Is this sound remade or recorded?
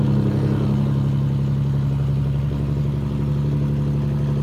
recorded